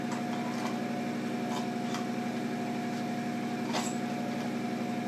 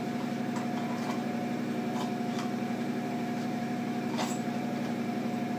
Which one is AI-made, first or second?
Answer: second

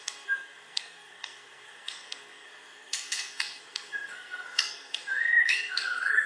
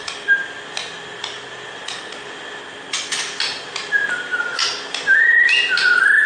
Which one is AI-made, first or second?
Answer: first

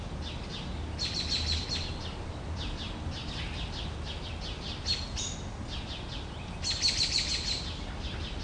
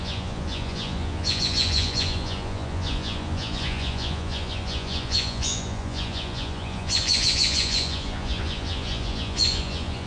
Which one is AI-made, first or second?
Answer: second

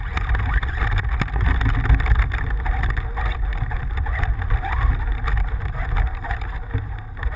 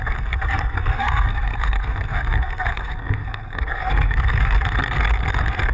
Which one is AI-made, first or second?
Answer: second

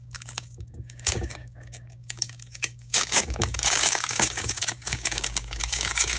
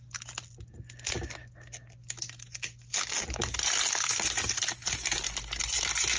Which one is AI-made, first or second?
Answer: first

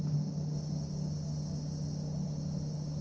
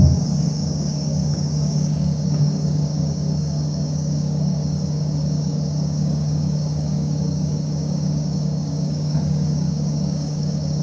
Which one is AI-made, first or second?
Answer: second